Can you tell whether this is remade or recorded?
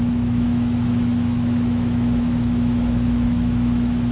remade